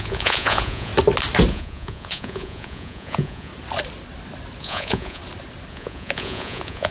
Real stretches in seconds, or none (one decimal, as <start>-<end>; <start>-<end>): 0.9-1.5; 3.5-4.6; 5.2-5.7